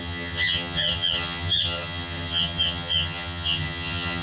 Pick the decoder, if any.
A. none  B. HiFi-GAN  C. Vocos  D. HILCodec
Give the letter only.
B